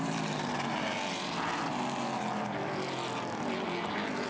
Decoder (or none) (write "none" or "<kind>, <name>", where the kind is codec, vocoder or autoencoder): none